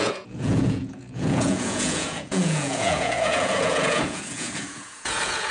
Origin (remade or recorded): remade